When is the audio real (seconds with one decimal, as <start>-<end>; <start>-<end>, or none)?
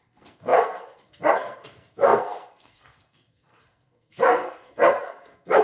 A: none